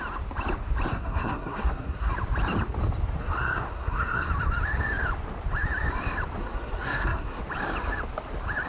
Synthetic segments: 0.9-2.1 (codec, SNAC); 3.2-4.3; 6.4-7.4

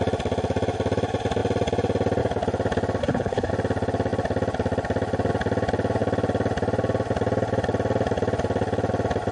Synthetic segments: 3.0-3.5 (codec, SNAC)